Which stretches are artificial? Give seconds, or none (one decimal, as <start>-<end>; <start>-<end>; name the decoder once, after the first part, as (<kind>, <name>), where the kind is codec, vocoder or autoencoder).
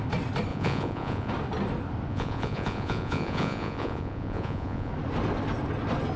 0.5-1.3 (vocoder, Vocos); 2.1-4.9